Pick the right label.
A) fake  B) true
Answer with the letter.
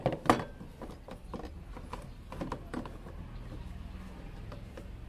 B